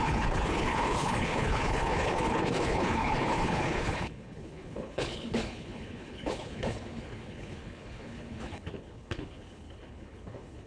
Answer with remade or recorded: remade